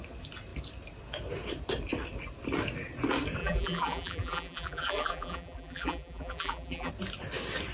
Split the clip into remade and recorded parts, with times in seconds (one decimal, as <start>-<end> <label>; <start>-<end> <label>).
0.0-3.4 recorded; 3.4-6.9 remade; 6.9-7.7 recorded